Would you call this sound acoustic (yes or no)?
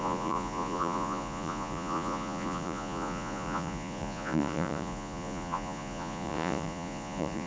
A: no